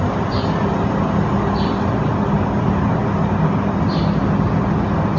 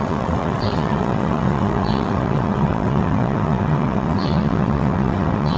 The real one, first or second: first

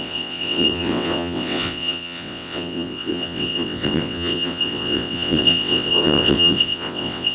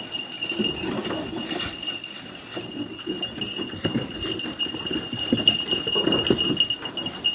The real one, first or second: second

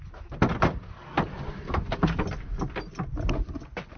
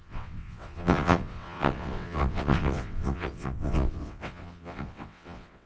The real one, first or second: first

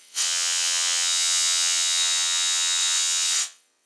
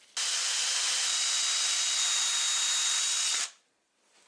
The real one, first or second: second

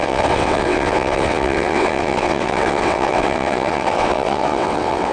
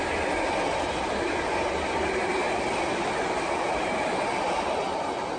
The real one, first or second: second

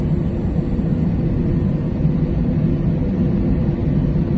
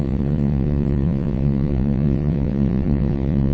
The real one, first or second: first